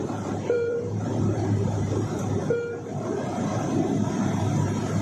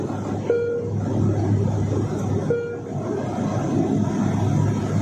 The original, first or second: second